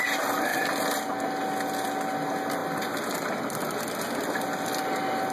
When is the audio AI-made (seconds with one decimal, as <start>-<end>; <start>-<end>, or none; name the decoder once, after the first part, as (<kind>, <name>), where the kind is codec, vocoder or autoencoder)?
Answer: none